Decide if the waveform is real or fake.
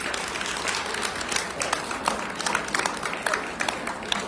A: real